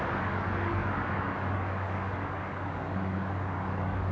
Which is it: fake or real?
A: fake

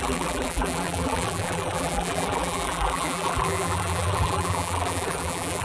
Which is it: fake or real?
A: fake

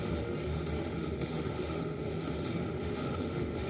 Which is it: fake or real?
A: fake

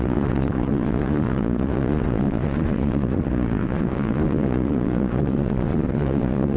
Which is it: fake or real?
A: fake